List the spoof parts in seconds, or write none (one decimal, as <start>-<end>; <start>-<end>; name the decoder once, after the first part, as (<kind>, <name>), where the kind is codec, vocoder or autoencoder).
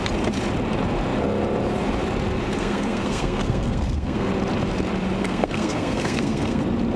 2.6-4.3 (codec, SNAC); 5.2-6.6